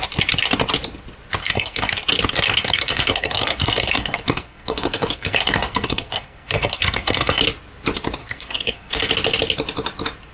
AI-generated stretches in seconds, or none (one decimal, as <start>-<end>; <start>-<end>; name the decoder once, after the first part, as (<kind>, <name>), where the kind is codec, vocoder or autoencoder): 1.4-1.9 (codec, SNAC); 2.6-7.4; 8.2-9.1